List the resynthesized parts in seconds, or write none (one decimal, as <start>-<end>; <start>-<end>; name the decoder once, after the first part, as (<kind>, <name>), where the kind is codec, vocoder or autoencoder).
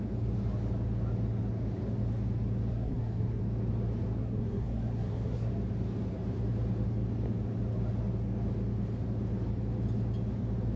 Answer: 2.7-3.4 (codec, SNAC); 4.2-5.5